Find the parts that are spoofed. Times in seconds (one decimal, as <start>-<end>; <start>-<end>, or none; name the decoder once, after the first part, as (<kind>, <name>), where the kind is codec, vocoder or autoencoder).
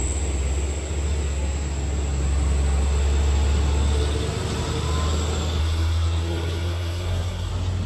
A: 5.6-7.5 (codec, SNAC)